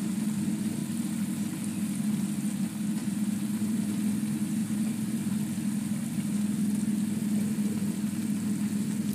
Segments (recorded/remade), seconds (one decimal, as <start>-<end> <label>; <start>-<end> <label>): 0.0-3.0 recorded; 3.0-3.8 remade; 3.8-4.6 recorded; 4.6-5.2 remade; 5.2-9.1 recorded